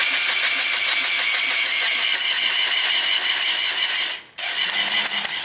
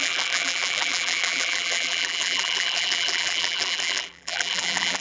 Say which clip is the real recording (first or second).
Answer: first